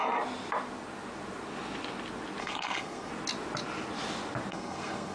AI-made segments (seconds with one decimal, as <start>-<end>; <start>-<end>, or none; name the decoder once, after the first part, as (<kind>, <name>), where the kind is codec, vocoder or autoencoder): 2.4-3.1 (codec, SNAC); 4.5-5.1

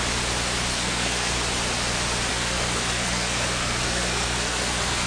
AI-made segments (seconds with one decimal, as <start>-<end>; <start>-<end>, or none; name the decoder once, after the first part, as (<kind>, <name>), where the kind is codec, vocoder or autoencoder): 0.7-1.3 (codec, SNAC); 2.3-5.1

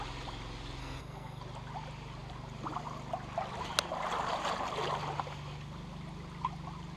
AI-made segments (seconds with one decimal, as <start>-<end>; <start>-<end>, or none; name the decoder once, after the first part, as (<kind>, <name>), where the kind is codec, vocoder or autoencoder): 0.8-1.4 (codec, SNAC)

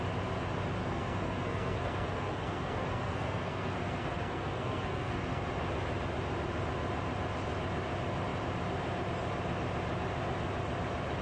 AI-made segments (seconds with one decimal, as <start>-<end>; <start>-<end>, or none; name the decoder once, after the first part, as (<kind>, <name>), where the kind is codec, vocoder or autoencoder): 0.8-5.4 (codec, SNAC)

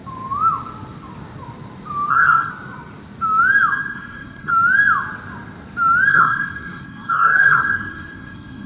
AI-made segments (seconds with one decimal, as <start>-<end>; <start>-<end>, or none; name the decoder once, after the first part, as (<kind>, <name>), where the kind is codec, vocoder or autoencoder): 2.1-2.5 (codec, SNAC); 3.7-4.5; 6.1-8.7

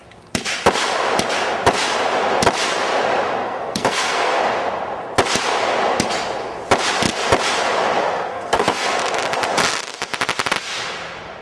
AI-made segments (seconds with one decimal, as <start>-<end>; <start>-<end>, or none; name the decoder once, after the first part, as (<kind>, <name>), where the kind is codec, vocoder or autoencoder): 3.4-4.4 (codec, SNAC); 8.0-9.0